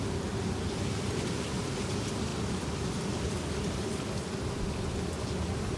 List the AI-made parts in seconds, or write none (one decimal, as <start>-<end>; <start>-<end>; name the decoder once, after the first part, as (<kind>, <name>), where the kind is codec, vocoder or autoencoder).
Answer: none